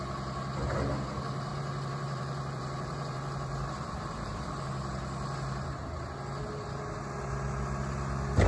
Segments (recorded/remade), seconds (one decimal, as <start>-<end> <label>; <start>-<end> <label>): 0.0-1.5 recorded; 1.5-4.5 remade; 4.5-8.5 recorded